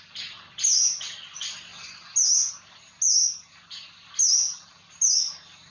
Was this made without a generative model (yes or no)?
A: yes